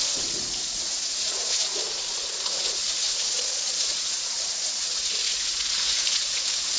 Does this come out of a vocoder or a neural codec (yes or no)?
yes